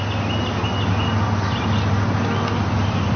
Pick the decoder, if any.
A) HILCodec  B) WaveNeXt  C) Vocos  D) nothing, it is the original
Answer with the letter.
D